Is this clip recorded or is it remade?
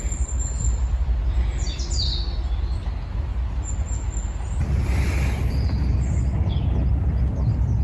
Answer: recorded